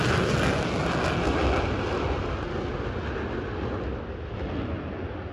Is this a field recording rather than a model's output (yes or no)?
yes